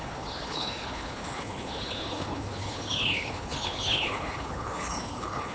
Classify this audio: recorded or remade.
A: remade